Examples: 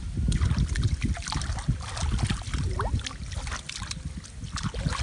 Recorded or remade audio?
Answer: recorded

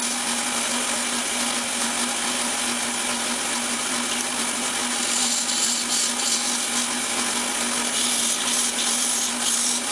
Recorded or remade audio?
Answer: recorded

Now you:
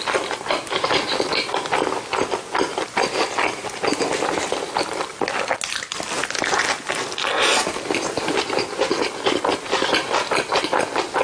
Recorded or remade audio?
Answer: recorded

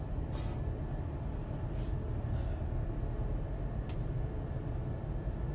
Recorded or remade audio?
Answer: recorded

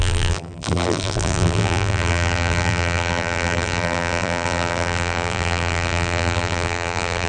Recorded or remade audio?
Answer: remade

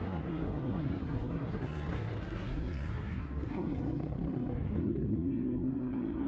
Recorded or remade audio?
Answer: remade